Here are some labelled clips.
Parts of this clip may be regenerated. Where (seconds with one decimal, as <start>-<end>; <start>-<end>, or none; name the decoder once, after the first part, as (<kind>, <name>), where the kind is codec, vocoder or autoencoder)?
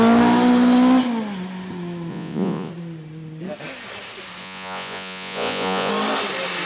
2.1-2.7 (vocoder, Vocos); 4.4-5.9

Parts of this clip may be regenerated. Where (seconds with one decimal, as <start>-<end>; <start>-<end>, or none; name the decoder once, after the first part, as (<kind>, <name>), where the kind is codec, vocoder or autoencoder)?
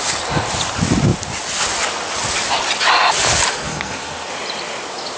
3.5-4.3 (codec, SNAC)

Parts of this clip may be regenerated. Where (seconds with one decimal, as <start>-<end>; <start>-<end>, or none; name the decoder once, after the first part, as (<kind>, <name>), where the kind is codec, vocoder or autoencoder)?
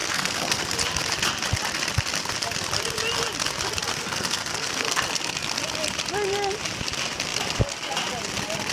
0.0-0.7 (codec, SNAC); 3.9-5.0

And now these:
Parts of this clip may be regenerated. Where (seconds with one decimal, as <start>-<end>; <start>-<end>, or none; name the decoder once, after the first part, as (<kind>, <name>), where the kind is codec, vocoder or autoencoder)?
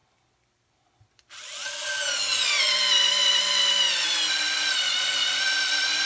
none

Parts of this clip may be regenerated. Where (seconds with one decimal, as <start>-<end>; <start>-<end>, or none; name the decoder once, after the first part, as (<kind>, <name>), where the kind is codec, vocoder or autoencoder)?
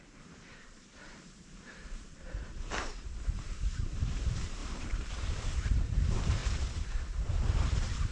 0.0-8.1 (vocoder, BigVGAN v2)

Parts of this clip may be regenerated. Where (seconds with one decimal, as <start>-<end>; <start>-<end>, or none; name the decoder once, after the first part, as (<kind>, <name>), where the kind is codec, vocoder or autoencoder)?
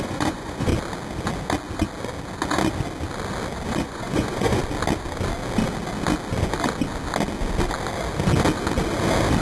0.0-0.7 (vocoder, Vocos); 3.7-4.6